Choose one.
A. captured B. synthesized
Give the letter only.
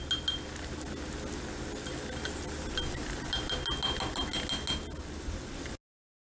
A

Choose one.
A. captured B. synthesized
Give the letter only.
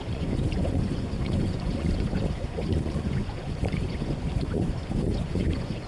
B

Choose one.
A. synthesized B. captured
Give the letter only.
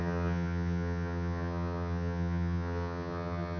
A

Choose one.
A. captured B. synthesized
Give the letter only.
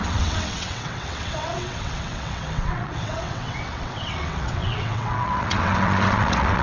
B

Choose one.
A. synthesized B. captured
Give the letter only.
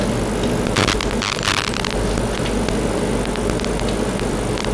B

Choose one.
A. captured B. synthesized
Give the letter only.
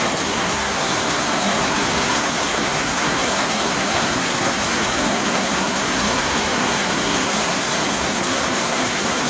B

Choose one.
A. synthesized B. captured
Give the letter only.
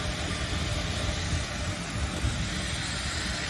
B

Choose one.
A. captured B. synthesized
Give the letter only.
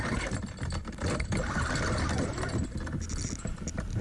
B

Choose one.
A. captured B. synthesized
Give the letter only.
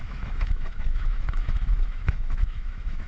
B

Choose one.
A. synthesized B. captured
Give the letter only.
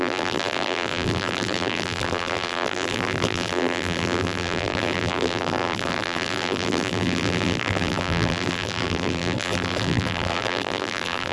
A